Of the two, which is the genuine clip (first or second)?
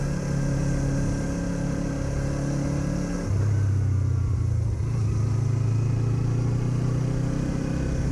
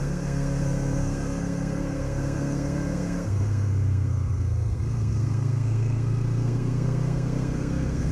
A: first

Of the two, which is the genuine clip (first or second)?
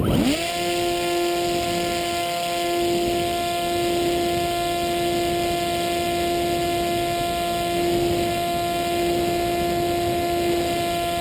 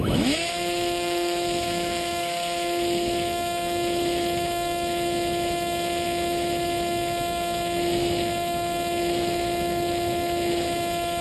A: first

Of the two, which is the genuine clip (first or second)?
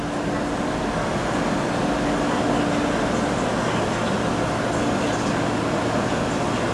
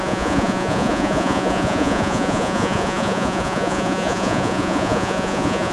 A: first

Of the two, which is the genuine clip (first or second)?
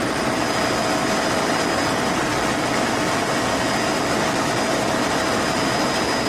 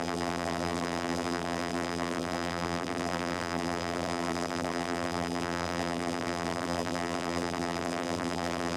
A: first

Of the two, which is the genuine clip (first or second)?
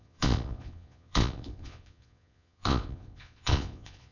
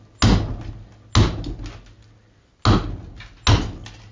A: second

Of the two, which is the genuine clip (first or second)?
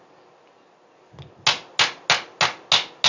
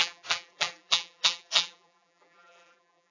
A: first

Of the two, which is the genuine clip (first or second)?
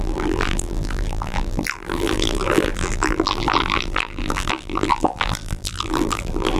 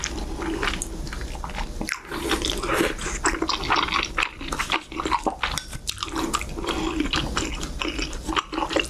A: second